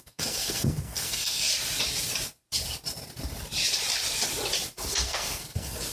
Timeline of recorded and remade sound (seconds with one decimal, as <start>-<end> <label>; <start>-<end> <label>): 0.0-1.5 remade; 1.5-4.9 recorded; 4.9-5.9 remade